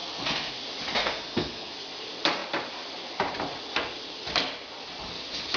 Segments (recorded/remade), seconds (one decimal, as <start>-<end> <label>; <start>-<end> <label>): 0.0-0.5 remade; 0.5-1.0 recorded; 1.0-1.9 remade; 1.9-5.6 recorded